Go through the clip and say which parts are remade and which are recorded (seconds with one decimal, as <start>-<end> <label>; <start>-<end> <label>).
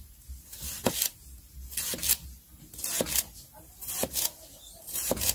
0.0-0.8 remade; 0.8-4.0 recorded; 4.0-5.3 remade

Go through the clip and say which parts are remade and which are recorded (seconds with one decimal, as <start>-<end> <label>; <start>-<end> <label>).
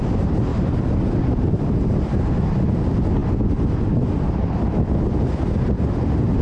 0.0-6.4 recorded